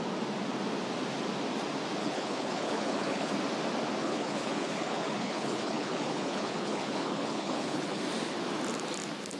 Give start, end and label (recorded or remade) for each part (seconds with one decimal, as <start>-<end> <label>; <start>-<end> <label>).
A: 0.0-2.0 recorded; 2.0-3.3 remade; 3.3-4.0 recorded; 4.0-8.0 remade; 8.0-9.4 recorded